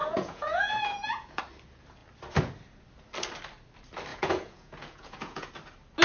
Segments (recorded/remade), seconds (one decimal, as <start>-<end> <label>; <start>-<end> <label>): 0.0-1.4 remade; 1.4-4.1 recorded; 4.1-5.5 remade; 5.5-6.0 recorded